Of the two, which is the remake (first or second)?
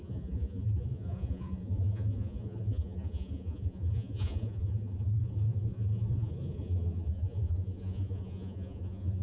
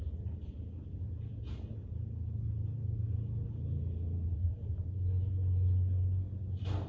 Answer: first